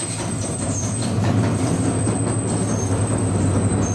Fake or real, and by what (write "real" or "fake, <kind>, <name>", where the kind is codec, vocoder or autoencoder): real